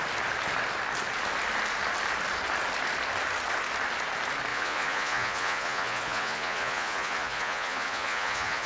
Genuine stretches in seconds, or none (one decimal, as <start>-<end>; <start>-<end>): 0.0-4.5